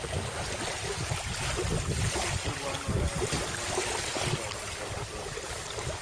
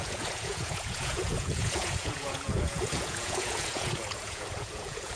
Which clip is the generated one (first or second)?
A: second